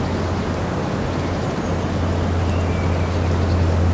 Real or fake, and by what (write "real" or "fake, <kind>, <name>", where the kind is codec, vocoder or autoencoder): real